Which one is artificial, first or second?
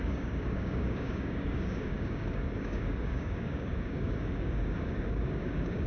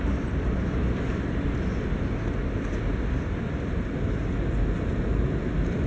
first